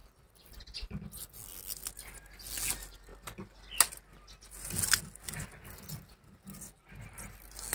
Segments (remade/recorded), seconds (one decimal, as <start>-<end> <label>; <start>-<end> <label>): 0.0-7.7 recorded